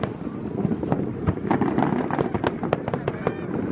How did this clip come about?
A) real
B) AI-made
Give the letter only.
A